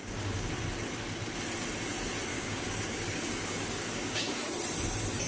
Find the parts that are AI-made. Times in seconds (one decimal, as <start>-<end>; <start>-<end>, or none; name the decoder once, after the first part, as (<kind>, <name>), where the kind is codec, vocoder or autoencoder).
0.0-0.5 (codec, DAC); 2.3-4.5